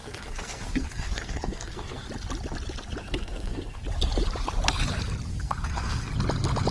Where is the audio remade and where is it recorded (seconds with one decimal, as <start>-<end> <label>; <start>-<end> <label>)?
0.0-2.1 remade; 2.1-3.0 recorded; 3.0-3.8 remade; 3.8-5.3 recorded; 5.3-6.1 remade; 6.1-6.7 recorded